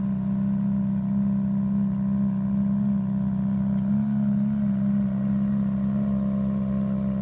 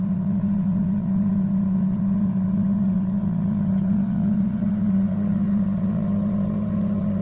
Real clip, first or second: first